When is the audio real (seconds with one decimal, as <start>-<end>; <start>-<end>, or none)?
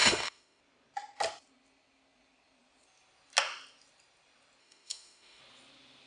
0.6-4.6; 5.4-6.1